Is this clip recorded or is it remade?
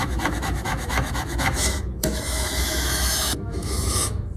remade